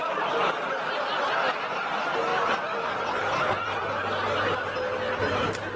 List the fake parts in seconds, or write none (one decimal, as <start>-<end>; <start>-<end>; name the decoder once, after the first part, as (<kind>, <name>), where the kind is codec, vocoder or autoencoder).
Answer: none